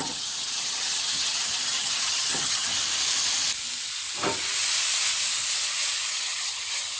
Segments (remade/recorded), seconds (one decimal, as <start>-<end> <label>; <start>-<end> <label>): 0.0-2.7 remade; 2.7-6.1 recorded; 6.1-7.0 remade